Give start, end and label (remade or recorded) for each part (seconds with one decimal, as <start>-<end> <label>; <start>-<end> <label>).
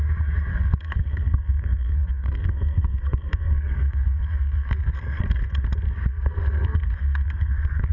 0.0-0.5 recorded; 0.5-5.2 remade; 5.2-6.1 recorded; 6.1-7.9 remade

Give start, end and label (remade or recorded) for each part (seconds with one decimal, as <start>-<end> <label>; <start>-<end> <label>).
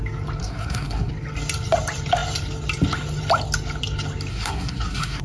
0.0-0.4 recorded; 0.4-1.1 remade; 1.1-4.3 recorded; 4.3-5.2 remade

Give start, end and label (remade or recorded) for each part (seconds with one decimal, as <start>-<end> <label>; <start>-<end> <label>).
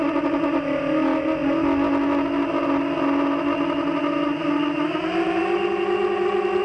0.0-6.6 recorded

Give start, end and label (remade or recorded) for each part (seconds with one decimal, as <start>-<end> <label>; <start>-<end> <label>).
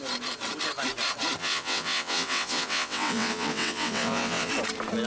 0.0-1.4 recorded; 1.4-4.5 remade; 4.5-5.1 recorded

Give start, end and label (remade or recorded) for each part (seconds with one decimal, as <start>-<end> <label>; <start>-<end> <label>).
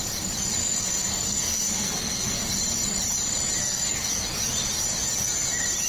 0.0-0.6 recorded; 0.6-2.5 remade; 2.5-3.6 recorded; 3.6-4.1 remade; 4.1-5.9 recorded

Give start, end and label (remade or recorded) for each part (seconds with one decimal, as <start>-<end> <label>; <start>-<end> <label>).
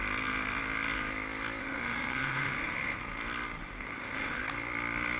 0.0-1.6 recorded; 1.6-3.0 remade; 3.0-3.6 recorded; 3.6-4.4 remade; 4.4-5.2 recorded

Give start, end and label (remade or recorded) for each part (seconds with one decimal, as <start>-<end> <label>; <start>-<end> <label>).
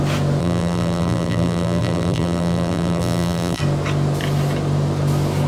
0.0-0.4 recorded; 0.4-3.6 remade; 3.6-5.5 recorded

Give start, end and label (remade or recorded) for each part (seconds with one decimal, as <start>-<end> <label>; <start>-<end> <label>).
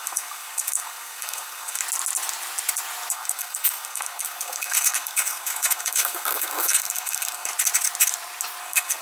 0.0-1.8 remade; 1.8-3.1 recorded; 3.1-7.5 remade; 7.5-8.6 recorded; 8.6-9.0 remade